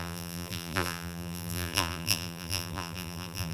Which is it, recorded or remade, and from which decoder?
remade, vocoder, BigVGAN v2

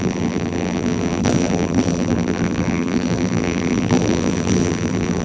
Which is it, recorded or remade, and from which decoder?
remade, vocoder, BigVGAN v2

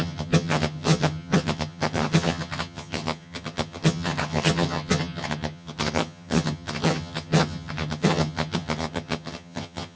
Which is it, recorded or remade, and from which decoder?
remade, vocoder, HiFi-GAN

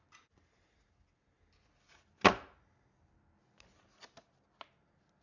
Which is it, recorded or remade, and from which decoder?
recorded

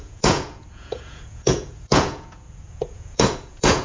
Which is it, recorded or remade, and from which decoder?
remade, vocoder, Vocos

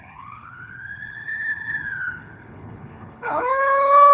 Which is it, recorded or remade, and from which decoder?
remade, codec, HILCodec